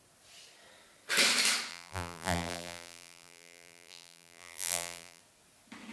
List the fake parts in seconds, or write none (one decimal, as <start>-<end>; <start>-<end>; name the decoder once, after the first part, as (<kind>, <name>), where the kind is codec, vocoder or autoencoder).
1.7-5.2 (vocoder, BigVGAN v2)

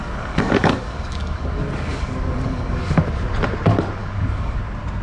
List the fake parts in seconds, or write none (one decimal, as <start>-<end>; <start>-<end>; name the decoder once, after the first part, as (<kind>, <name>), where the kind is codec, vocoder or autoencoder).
0.0-3.0 (codec, DAC); 4.0-4.6

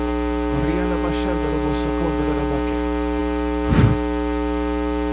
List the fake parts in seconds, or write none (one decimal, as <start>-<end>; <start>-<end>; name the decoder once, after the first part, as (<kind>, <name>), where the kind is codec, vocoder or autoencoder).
none

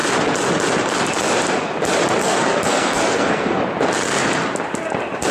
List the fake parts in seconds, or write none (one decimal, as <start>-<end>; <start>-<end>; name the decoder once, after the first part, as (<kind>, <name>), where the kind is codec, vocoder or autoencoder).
2.2-3.6 (codec, SNAC)

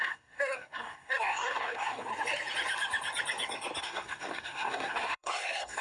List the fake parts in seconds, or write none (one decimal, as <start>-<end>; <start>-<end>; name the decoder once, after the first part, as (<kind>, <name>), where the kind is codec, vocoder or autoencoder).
0.0-2.1 (codec, SNAC); 3.8-5.8